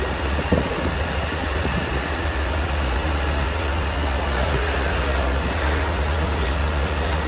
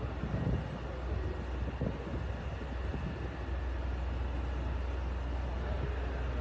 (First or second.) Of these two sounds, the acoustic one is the second